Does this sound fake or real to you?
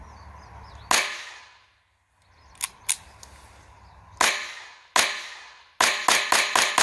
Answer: real